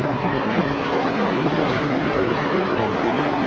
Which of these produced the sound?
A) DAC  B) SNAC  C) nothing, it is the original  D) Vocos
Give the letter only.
B